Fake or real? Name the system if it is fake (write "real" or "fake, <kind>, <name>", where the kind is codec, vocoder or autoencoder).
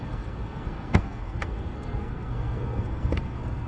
fake, codec, SNAC